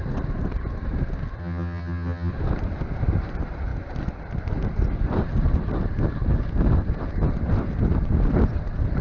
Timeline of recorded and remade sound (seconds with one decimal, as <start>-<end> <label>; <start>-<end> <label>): 0.0-1.4 recorded; 1.4-2.3 remade; 2.3-9.0 recorded